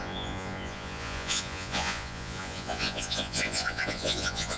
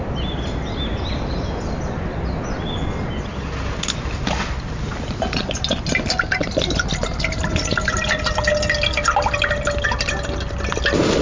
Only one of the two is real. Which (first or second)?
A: second